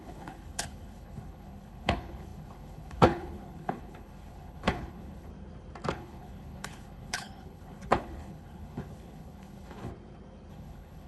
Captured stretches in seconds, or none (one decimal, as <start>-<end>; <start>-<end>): 5.3-5.9; 9.9-10.5